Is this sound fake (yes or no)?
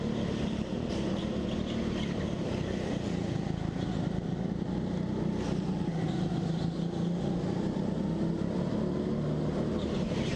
no